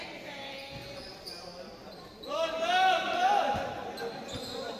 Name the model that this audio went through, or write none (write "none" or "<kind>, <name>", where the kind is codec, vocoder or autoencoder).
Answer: none